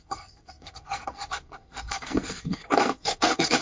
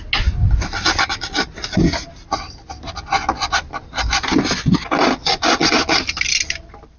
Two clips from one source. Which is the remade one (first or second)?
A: first